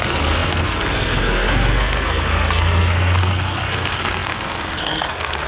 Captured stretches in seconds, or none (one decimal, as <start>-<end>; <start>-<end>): none